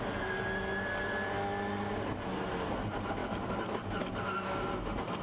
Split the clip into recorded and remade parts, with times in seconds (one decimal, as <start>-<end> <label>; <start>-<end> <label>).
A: 0.0-5.2 recorded